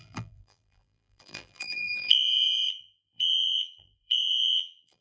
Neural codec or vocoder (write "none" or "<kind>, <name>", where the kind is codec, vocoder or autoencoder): vocoder, BigVGAN v2